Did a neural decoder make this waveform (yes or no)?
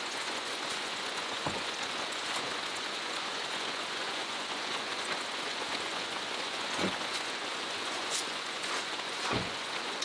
yes